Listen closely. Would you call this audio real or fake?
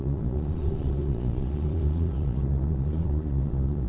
fake